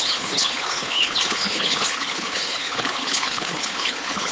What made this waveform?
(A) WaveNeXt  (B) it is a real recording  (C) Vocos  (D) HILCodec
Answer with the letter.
D